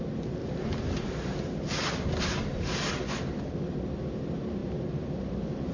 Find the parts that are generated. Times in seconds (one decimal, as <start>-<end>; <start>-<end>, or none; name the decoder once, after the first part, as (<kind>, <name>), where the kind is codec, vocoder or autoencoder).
0.4-1.9 (vocoder, BigVGAN v2)